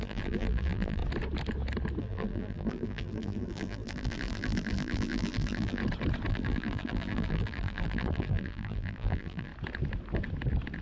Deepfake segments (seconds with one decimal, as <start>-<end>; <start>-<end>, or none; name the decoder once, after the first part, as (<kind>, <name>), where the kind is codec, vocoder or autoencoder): 0.0-1.0 (vocoder, BigVGAN v2); 2.0-5.8; 6.3-9.5